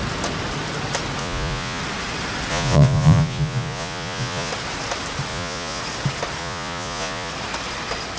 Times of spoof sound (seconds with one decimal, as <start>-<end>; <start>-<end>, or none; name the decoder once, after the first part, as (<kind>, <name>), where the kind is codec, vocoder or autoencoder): 1.2-1.8 (vocoder, Vocos); 2.5-4.5; 5.3-5.8; 6.4-7.3